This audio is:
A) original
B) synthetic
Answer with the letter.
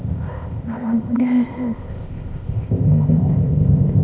B